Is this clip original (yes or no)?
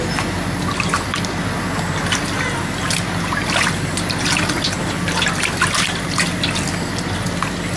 yes